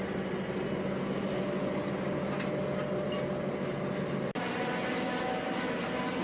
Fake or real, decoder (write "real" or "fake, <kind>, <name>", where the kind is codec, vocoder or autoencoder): real